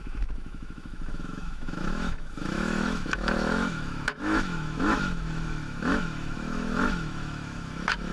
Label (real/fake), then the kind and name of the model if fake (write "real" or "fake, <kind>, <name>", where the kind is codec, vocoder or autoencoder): fake, autoencoder, DAC-VAE